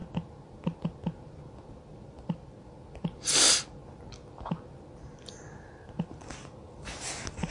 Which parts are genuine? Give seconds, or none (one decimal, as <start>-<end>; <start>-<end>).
0.0-7.5